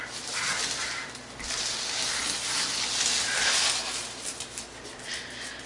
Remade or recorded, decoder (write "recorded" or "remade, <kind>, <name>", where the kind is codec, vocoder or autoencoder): recorded